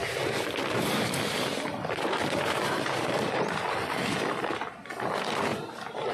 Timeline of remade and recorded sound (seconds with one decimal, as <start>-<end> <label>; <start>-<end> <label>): 0.0-0.6 recorded; 0.6-4.1 remade; 4.1-5.5 recorded; 5.5-6.1 remade